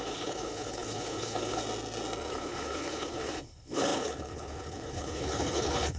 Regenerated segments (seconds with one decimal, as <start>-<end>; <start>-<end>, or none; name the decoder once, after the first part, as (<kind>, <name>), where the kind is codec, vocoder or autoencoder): 0.0-1.6 (codec, HILCodec); 2.3-6.0